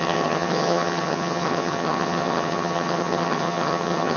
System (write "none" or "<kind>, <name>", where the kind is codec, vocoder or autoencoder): vocoder, HiFi-GAN